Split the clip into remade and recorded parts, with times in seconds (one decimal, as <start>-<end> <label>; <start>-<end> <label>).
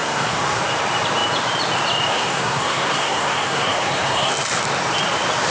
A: 0.0-0.6 remade; 0.6-2.1 recorded; 2.1-4.3 remade; 4.3-5.5 recorded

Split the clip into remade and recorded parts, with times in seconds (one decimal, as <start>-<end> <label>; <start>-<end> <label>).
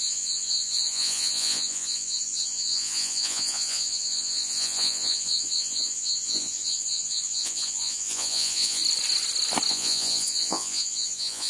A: 0.0-8.8 remade; 8.8-9.7 recorded; 9.7-11.5 remade